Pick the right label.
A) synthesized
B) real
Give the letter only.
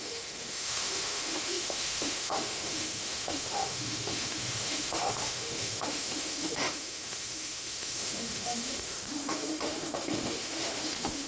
A